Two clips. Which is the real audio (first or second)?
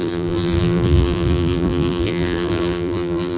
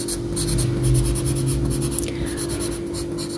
second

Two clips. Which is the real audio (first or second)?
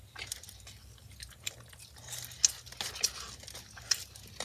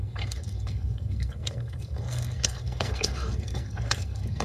first